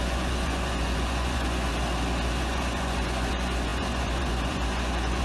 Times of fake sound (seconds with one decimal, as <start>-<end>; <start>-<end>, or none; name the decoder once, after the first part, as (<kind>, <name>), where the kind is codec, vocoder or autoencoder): 0.0-1.7 (vocoder, Vocos); 2.4-5.2